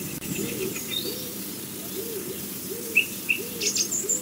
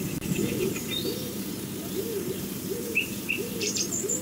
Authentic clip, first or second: first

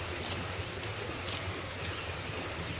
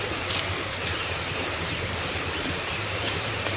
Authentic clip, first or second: first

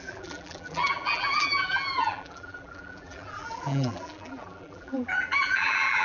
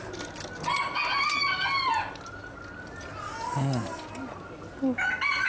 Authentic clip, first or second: second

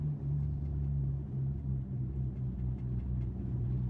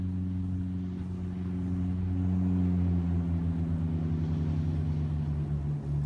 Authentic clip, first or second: second